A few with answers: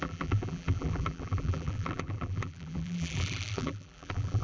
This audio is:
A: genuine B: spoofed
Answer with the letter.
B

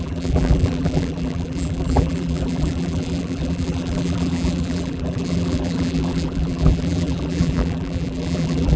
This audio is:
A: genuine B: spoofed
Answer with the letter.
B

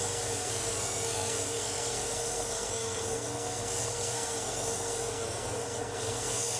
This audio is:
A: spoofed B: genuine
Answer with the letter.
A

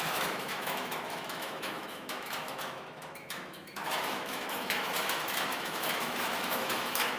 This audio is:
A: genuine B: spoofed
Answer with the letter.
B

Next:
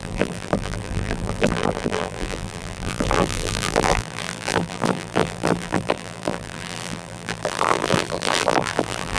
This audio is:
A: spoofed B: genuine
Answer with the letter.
A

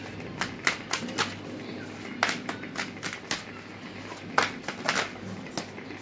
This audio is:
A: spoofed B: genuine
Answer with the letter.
B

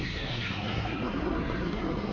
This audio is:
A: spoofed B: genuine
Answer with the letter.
A